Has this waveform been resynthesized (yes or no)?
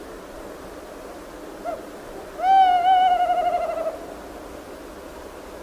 no